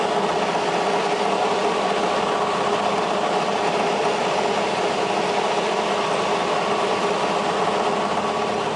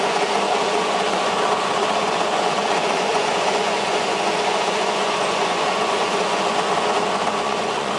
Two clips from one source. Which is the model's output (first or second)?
second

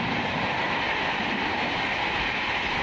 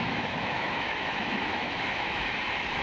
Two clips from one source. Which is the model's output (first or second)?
second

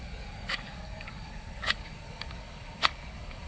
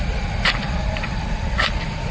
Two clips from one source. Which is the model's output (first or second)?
first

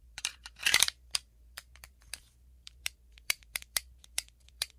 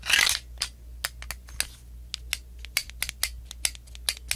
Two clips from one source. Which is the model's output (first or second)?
first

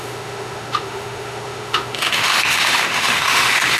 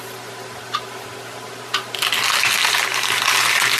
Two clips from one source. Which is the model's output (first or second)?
first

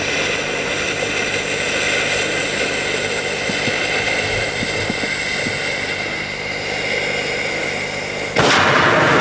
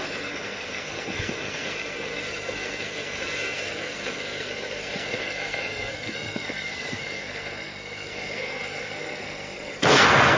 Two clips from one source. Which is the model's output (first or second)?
second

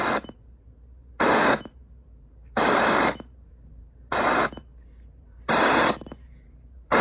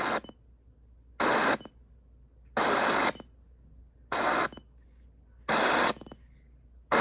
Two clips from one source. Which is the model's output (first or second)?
first